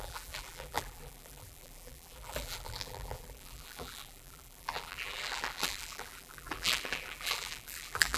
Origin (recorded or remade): remade